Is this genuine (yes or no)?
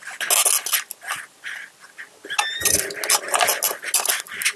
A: yes